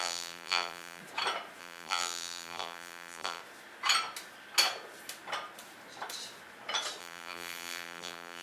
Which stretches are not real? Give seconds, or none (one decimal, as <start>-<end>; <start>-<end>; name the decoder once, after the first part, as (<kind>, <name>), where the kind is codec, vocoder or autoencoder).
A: 0.0-1.0 (vocoder, BigVGAN v2); 1.6-3.4; 7.0-8.4